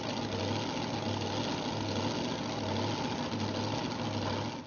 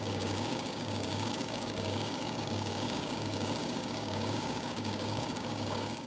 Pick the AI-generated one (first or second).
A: second